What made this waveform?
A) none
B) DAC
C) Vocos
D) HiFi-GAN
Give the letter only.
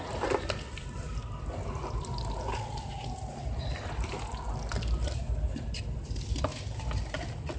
A